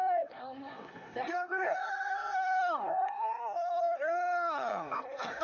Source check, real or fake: fake